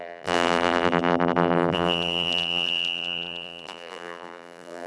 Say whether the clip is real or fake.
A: fake